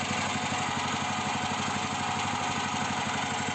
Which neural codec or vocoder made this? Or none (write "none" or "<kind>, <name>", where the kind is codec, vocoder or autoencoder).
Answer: none